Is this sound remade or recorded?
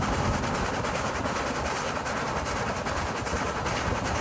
recorded